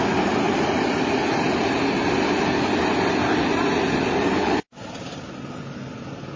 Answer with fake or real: real